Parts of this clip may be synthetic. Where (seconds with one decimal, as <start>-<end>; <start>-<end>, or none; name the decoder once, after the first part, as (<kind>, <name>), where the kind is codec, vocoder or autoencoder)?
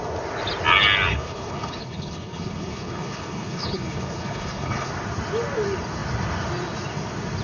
1.1-4.9 (codec, HILCodec)